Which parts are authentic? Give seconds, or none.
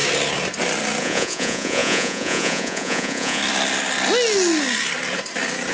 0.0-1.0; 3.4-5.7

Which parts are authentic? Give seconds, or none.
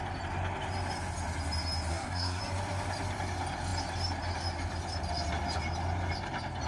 0.0-1.9; 2.4-6.7